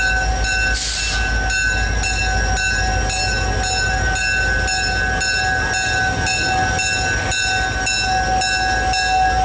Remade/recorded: recorded